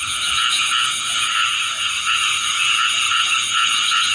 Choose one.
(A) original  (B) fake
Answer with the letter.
B